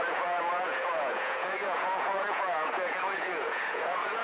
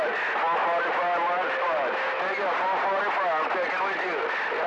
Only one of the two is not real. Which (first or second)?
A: first